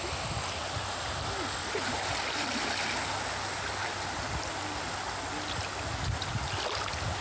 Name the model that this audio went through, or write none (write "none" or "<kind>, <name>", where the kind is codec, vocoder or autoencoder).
none